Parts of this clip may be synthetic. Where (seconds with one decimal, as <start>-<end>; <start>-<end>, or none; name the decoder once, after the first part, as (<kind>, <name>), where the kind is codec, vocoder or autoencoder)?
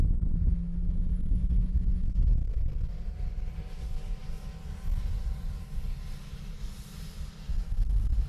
2.4-3.5 (vocoder, BigVGAN v2)